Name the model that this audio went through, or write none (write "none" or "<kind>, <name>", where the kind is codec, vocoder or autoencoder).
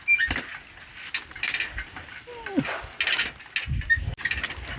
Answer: none